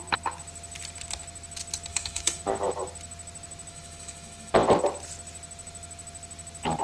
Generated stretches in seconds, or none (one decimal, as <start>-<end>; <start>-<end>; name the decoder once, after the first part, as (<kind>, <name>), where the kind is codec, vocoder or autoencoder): 1.9-2.4 (autoencoder, DAC-VAE); 3.7-4.5

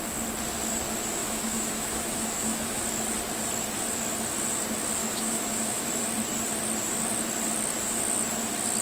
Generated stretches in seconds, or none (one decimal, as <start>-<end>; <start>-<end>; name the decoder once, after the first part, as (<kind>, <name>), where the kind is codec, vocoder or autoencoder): 1.2-2.8 (autoencoder, DAC-VAE); 5.0-5.9